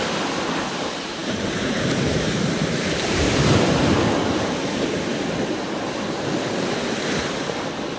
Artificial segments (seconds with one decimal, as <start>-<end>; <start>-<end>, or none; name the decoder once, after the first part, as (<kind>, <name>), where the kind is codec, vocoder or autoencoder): 0.6-3.9 (vocoder, BigVGAN v2); 7.2-8.0